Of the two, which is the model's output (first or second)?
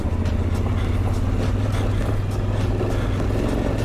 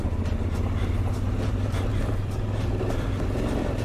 second